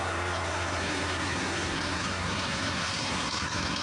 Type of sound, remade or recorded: remade